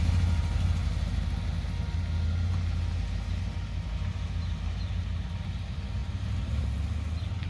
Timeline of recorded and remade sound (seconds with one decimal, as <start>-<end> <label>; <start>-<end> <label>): 0.0-6.0 recorded; 6.0-6.6 remade; 6.6-7.5 recorded